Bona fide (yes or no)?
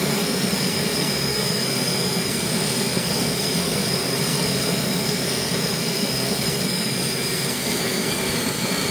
no